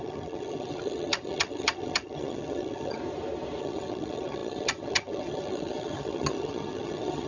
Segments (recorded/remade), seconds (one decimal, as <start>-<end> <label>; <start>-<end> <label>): 0.0-3.0 remade; 3.0-3.6 recorded; 3.6-7.3 remade